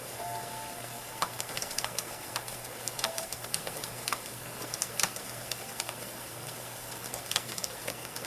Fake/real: fake